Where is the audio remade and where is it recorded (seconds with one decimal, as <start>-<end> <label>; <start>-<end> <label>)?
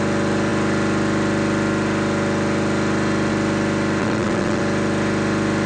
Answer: 0.0-4.0 recorded; 4.0-4.6 remade; 4.6-5.7 recorded